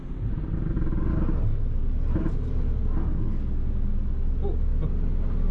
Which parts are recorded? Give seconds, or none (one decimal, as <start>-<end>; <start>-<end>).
0.0-5.5